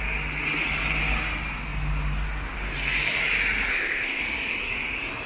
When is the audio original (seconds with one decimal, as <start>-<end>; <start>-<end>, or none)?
0.0-3.7; 4.2-5.3